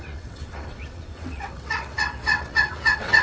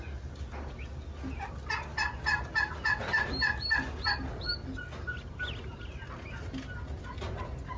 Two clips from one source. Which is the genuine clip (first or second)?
second